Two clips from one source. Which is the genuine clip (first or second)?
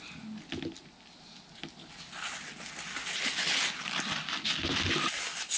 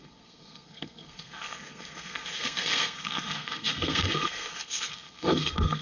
first